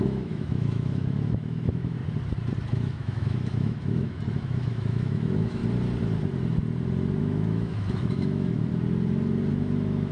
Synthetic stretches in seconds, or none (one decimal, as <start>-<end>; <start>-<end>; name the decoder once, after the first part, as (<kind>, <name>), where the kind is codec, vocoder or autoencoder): 0.0-2.0 (autoencoder, DAC-VAE); 2.7-5.6; 7.2-8.7; 9.5-10.1

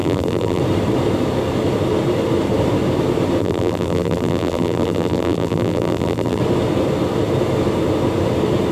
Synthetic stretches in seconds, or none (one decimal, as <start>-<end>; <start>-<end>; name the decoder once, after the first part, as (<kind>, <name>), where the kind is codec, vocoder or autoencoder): 0.0-0.6 (vocoder, BigVGAN v2); 3.4-6.4

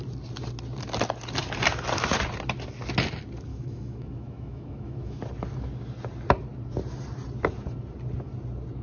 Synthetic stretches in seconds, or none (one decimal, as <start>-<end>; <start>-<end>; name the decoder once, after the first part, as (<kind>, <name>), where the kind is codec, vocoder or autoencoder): 3.5-5.2 (autoencoder, DAC-VAE)

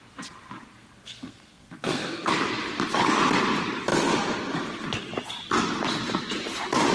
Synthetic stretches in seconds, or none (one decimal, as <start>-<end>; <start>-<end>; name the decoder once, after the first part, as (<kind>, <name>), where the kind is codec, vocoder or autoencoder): 0.7-2.3 (codec, SNAC)

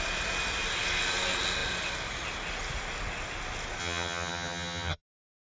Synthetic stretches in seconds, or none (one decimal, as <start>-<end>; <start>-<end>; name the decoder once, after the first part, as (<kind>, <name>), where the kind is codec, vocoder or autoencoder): 3.8-5.0 (vocoder, HiFi-GAN)

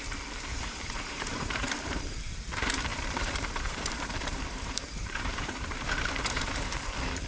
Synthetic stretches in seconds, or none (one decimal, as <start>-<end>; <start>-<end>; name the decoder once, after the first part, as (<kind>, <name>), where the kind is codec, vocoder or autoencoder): 0.5-2.3 (vocoder, BigVGAN v2); 2.9-6.7

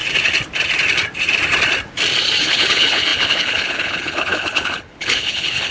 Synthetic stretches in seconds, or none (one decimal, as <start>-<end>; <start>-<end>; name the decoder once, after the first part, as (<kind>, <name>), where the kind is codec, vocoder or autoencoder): 2.4-5.7 (codec, HILCodec)